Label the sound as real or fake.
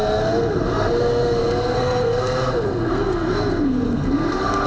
fake